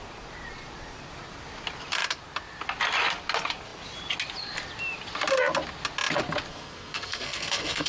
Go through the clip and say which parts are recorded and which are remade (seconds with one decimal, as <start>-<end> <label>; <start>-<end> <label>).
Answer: 0.0-6.5 recorded; 6.5-7.9 remade